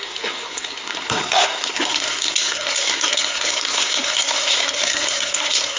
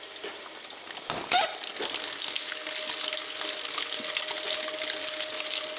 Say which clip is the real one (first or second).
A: second